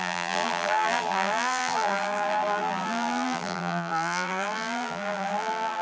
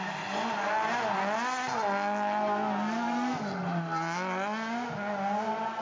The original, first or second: second